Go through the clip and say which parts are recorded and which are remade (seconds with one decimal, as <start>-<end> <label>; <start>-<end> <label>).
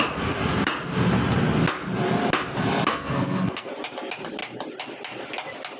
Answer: 0.0-2.9 recorded; 2.9-3.7 remade; 3.7-5.8 recorded